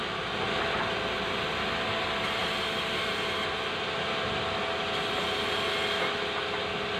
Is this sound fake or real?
real